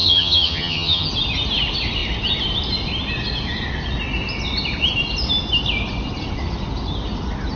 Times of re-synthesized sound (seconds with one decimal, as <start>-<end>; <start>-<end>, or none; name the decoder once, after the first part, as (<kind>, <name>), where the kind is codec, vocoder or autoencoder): 0.0-1.1 (vocoder, HiFi-GAN)